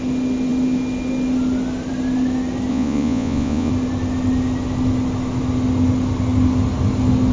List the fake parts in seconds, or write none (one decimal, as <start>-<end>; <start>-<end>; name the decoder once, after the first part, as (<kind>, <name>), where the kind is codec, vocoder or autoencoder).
2.7-3.7 (vocoder, Vocos)